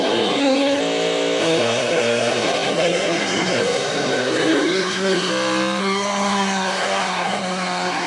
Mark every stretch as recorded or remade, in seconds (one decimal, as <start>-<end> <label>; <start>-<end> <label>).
0.0-0.8 remade; 0.8-1.4 recorded; 1.4-5.3 remade; 5.3-5.8 recorded; 5.8-8.1 remade